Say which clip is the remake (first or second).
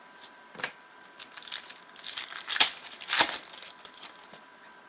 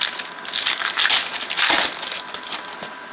first